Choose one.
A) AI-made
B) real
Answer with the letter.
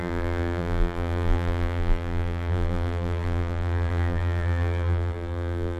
A